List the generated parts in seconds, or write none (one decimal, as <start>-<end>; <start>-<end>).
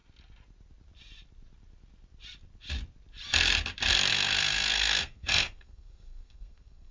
4.1-6.9